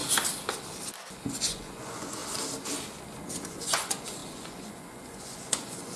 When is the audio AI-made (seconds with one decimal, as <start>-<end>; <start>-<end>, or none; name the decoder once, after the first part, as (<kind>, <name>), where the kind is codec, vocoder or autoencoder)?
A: 1.1-2.2 (vocoder, Vocos); 3.4-6.0

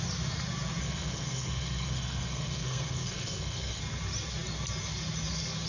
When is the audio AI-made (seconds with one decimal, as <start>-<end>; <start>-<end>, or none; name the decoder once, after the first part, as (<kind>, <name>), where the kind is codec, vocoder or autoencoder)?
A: 0.8-3.8 (codec, SNAC)

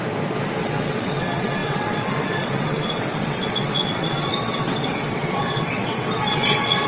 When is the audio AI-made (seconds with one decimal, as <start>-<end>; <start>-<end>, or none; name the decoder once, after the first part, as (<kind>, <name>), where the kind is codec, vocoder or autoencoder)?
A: 0.6-6.9 (vocoder, WaveNeXt)

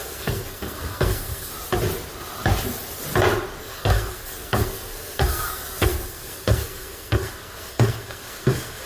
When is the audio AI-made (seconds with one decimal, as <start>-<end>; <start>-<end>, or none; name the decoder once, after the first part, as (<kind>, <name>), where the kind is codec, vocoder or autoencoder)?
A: 0.0-1.5 (codec, SNAC); 3.6-8.9

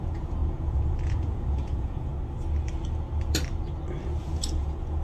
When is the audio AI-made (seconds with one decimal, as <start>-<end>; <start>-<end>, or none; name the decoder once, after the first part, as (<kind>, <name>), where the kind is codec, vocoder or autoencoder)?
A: 0.0-2.1 (vocoder, Vocos); 4.2-5.0

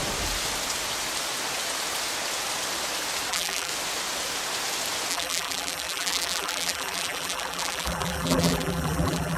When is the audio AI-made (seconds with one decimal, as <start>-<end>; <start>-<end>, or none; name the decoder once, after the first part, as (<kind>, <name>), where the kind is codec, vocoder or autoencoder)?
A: 3.3-3.7 (vocoder, BigVGAN v2); 5.1-9.4

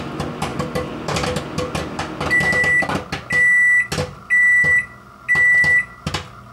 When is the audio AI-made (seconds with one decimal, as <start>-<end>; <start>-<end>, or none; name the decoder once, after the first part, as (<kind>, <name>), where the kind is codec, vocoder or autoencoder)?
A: none